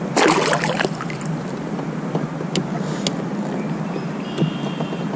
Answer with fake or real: real